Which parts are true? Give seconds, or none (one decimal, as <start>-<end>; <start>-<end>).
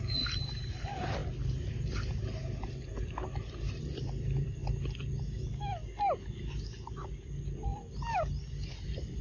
1.2-3.7; 4.6-8.7